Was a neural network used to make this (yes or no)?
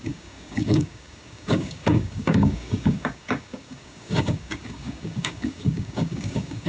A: yes